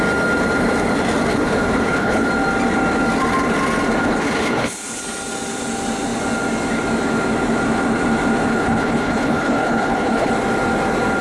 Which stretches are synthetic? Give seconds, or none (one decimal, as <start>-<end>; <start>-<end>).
1.3-2.3; 4.0-5.0; 8.5-10.3